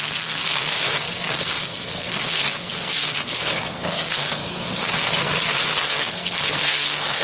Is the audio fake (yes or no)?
yes